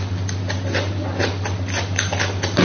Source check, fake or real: fake